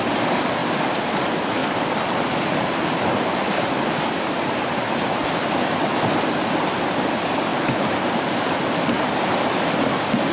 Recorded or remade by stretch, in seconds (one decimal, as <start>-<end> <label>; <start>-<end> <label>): 0.0-0.6 recorded; 0.6-1.2 remade; 1.2-7.5 recorded; 7.5-8.4 remade; 8.4-10.3 recorded